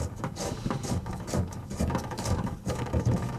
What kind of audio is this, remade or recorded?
remade